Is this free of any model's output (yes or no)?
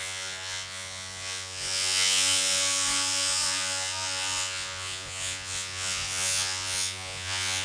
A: no